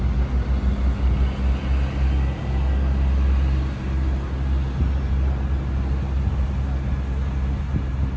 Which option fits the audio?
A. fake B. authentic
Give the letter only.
B